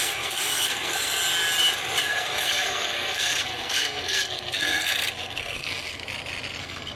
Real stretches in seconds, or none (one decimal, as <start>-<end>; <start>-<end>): 1.2-2.0; 6.0-6.6